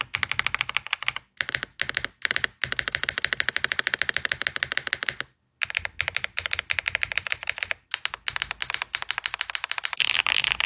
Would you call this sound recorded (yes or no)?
yes